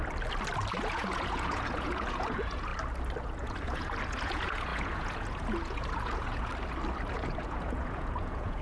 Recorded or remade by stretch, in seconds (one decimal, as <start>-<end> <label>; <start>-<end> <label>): 0.0-0.8 recorded; 0.8-2.7 remade; 2.7-3.2 recorded; 3.2-6.5 remade; 6.5-7.1 recorded; 7.1-8.6 remade